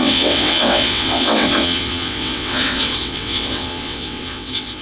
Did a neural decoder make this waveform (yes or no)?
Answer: yes